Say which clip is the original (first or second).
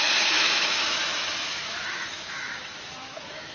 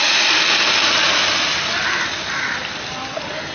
second